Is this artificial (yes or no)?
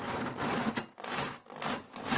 no